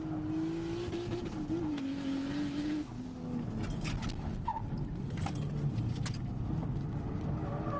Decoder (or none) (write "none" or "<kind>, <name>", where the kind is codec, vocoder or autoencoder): none